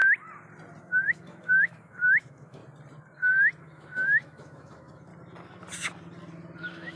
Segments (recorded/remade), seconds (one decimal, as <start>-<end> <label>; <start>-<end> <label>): 0.0-0.8 recorded; 0.8-2.6 remade; 2.6-3.6 recorded; 3.6-5.1 remade; 5.1-6.6 recorded; 6.6-7.0 remade